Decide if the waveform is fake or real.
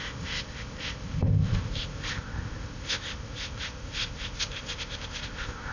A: fake